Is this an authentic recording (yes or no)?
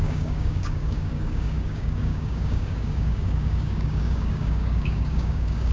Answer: no